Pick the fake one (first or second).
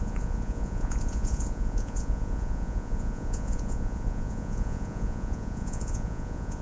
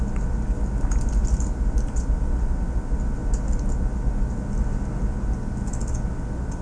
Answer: first